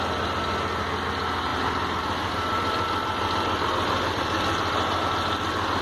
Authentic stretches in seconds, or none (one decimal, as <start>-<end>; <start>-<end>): 0.0-1.5; 5.0-5.8